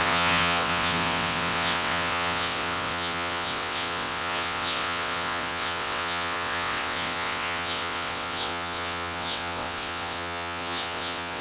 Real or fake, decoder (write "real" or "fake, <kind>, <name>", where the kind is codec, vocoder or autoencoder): fake, vocoder, WaveNeXt